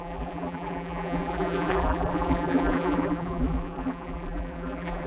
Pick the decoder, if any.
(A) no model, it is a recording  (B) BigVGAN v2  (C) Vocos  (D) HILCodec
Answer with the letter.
B